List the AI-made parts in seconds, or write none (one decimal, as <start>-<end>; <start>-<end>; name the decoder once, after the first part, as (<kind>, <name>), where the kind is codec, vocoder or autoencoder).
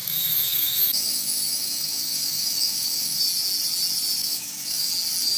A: 0.0-3.2 (autoencoder, DAC-VAE); 4.2-4.9